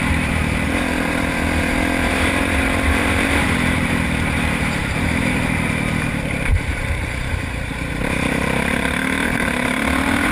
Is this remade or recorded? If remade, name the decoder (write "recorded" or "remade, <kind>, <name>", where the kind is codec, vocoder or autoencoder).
remade, vocoder, BigVGAN v2